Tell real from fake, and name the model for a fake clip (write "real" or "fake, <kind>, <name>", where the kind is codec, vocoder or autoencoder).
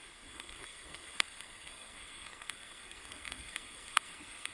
fake, codec, SNAC